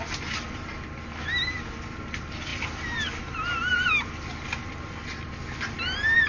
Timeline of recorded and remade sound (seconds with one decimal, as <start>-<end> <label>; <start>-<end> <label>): 0.0-6.3 recorded